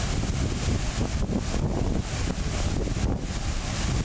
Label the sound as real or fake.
real